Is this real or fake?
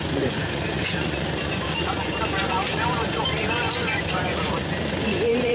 fake